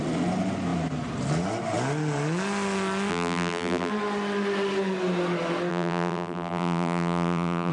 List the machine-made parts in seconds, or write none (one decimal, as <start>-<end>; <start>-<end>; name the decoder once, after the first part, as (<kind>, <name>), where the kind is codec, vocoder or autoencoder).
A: 3.1-3.9 (vocoder, BigVGAN v2); 5.7-7.7